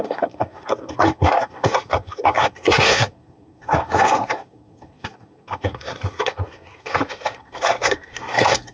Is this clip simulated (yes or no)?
yes